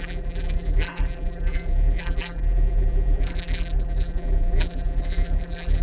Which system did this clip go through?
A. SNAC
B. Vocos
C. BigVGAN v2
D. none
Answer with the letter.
C